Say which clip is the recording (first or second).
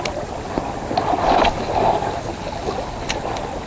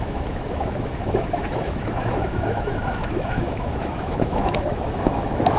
first